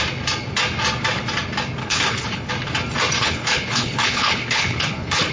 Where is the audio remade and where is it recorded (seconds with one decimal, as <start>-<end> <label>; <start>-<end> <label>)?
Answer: 0.0-1.8 recorded; 1.8-2.5 remade; 2.5-3.2 recorded; 3.2-5.3 remade